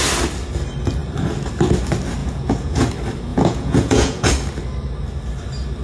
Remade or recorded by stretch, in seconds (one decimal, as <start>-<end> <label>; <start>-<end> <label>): 0.0-2.2 recorded; 2.2-2.9 remade; 2.9-3.3 recorded; 3.3-4.3 remade; 4.3-5.8 recorded